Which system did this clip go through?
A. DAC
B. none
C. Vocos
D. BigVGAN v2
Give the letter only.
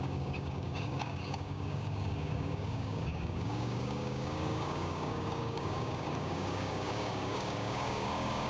A